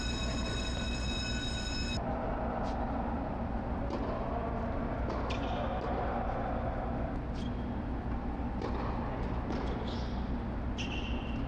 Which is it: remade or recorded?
recorded